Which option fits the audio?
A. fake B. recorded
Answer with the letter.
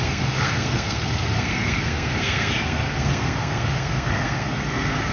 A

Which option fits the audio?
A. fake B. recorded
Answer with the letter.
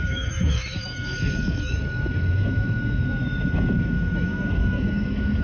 A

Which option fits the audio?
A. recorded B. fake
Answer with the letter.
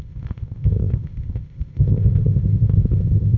B